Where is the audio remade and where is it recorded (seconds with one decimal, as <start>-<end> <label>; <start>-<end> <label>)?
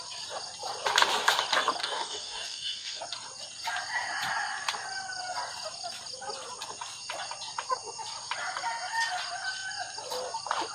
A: 0.0-1.8 recorded; 1.8-3.0 remade; 3.0-10.7 recorded